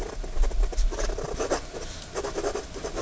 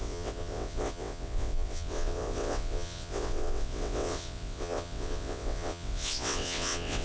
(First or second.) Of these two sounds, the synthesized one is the second